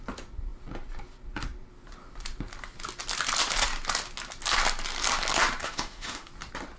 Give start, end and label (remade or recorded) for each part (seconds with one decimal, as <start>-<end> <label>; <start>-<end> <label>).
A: 0.0-5.6 recorded; 5.6-6.3 remade; 6.3-6.8 recorded